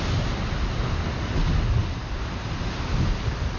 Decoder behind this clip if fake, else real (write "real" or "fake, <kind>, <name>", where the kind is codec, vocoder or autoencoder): real